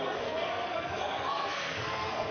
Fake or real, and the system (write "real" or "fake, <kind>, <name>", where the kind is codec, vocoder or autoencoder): fake, codec, SNAC